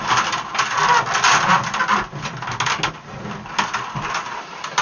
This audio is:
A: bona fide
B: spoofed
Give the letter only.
A